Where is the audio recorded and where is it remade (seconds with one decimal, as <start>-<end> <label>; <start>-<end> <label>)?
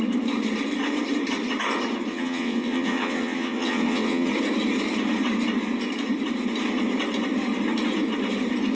0.0-2.1 recorded; 2.1-4.3 remade; 4.3-8.7 recorded